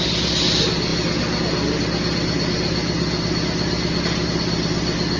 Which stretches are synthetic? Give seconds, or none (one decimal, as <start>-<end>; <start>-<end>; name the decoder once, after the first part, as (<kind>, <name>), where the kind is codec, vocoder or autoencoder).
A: none